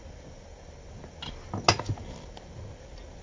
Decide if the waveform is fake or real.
real